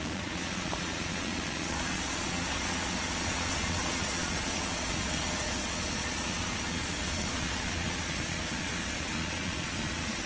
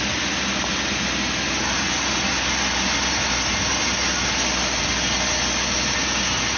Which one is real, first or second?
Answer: second